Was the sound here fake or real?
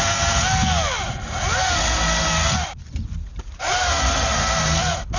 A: real